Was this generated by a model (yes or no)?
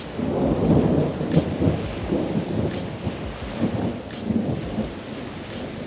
no